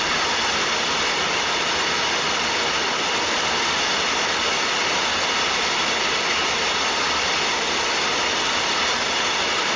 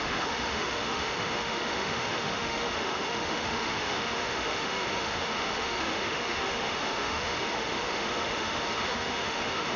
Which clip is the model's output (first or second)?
second